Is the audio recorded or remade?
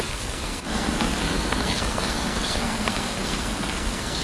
remade